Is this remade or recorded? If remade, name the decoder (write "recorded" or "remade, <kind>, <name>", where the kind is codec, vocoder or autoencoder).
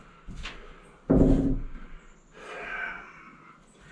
recorded